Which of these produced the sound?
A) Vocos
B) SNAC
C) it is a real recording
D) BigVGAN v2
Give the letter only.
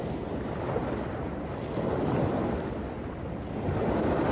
C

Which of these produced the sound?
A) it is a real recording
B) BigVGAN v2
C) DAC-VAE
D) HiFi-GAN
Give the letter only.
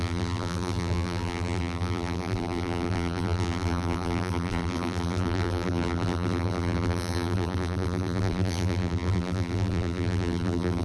B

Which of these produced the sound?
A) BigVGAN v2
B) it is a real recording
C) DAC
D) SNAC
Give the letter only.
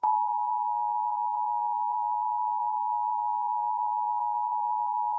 A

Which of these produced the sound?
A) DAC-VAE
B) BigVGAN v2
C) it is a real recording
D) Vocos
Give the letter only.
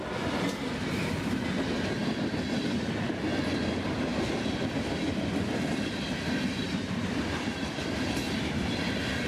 B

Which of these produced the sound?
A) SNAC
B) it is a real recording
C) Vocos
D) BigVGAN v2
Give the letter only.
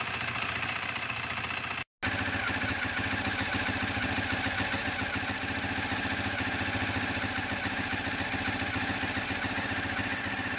B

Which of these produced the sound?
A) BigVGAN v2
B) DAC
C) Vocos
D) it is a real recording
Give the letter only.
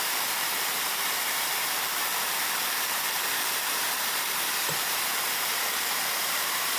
A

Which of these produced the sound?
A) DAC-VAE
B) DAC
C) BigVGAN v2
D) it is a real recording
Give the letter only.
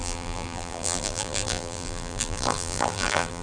C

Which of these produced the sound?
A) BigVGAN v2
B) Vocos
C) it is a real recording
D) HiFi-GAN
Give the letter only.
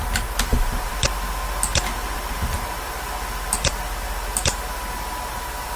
C